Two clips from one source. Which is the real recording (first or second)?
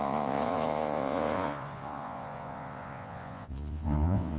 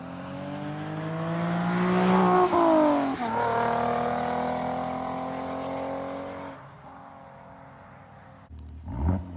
second